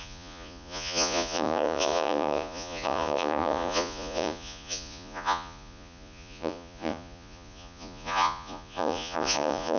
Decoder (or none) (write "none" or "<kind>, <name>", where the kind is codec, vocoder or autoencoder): vocoder, Vocos